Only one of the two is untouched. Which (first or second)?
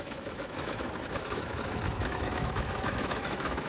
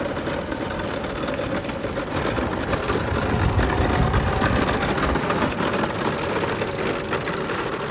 second